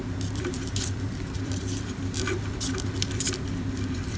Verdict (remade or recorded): remade